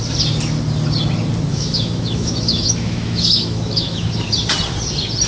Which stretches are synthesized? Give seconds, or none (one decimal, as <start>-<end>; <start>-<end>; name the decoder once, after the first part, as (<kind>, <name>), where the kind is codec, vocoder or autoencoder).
1.5-4.1 (autoencoder, DAC-VAE)